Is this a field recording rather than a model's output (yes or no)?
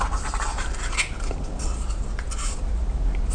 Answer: yes